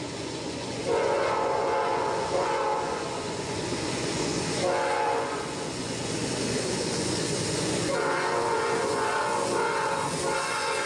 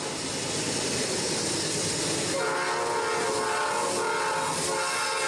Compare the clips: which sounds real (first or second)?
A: second